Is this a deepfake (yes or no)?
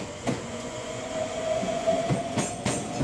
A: yes